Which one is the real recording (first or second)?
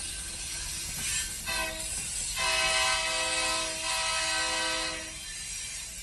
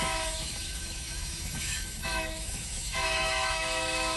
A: first